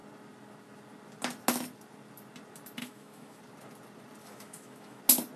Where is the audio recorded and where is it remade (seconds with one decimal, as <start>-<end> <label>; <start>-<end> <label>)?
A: 0.0-2.8 recorded; 2.8-3.4 remade; 3.4-4.2 recorded; 4.2-5.0 remade; 5.0-5.4 recorded